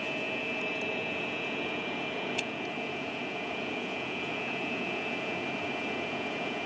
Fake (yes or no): yes